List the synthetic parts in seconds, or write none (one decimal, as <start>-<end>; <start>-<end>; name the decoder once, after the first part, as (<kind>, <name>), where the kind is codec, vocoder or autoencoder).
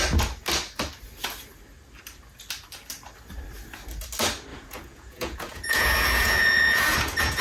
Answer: 4.5-7.4 (vocoder, Vocos)